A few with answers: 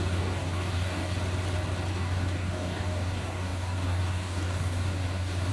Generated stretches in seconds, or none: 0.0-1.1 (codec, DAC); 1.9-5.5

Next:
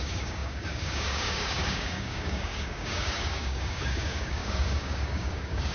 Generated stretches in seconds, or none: 0.0-5.7 (codec, DAC)